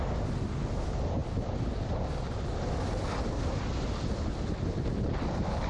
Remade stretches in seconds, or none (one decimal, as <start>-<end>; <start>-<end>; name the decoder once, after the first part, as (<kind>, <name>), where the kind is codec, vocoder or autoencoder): none